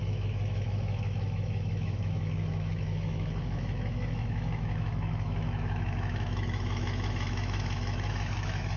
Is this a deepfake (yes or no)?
yes